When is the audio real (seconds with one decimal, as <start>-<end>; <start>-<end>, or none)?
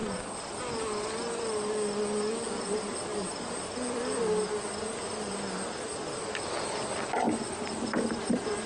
0.0-8.7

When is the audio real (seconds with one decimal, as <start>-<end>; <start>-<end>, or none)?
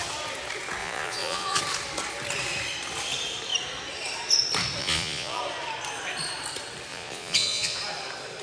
0.0-0.8; 1.6-4.8; 5.4-6.9; 7.8-8.4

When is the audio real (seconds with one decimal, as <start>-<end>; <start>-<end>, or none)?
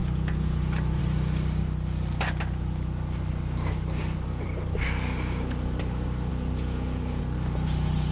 1.0-6.3; 7.2-8.1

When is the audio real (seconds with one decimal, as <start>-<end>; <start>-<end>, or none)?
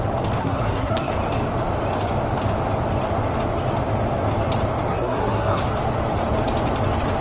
0.0-0.4; 1.1-4.9; 5.6-7.2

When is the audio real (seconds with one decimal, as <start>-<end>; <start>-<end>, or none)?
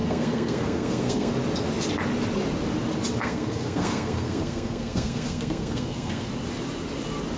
1.3-3.2; 6.3-7.4